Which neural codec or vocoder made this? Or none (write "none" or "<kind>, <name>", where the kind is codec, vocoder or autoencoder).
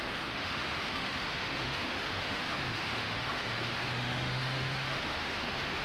autoencoder, DAC-VAE